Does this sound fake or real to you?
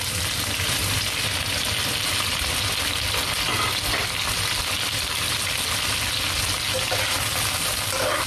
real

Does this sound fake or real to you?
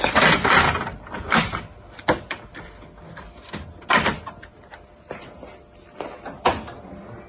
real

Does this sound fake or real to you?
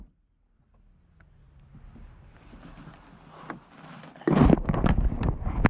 real